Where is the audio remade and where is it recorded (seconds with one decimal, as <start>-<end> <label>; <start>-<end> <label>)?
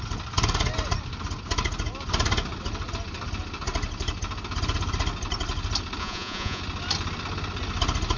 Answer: 0.0-6.0 recorded; 6.0-6.6 remade; 6.6-8.2 recorded